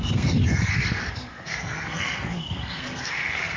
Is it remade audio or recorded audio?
remade